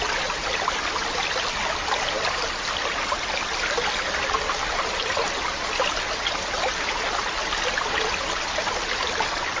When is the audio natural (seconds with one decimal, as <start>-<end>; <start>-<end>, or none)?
0.0-9.6